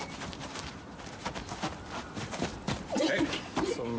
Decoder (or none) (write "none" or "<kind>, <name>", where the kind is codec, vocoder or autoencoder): vocoder, BigVGAN v2